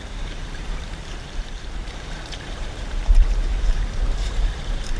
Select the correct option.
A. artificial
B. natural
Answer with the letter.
A